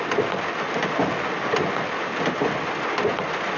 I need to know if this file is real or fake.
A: real